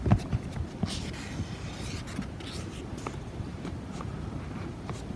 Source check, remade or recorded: recorded